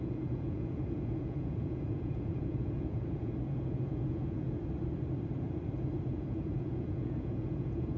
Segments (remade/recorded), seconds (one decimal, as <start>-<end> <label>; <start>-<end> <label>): 0.0-4.6 remade; 4.6-6.1 recorded; 6.1-8.0 remade